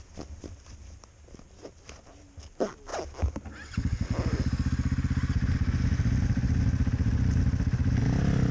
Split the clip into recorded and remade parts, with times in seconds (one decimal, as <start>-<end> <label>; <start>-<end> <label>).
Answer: 0.0-8.5 recorded